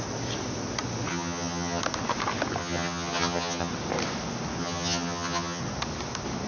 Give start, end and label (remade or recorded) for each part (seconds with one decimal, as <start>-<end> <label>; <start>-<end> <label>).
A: 0.0-1.1 recorded; 1.1-1.8 remade; 1.8-2.6 recorded; 2.6-3.7 remade; 3.7-4.6 recorded; 4.6-5.6 remade; 5.6-6.5 recorded

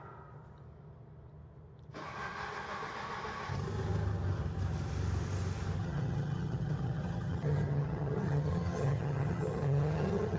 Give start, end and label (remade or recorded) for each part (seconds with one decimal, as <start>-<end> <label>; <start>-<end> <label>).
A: 0.0-5.8 recorded; 5.8-10.4 remade

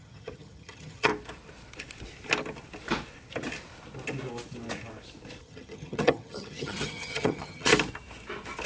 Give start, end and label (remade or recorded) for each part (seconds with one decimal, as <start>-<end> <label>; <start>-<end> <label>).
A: 0.0-1.1 remade; 1.1-5.4 recorded; 5.4-7.7 remade; 7.7-8.7 recorded

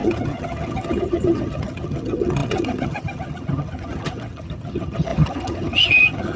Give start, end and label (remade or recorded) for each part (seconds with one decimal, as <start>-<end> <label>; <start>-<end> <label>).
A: 0.0-6.4 remade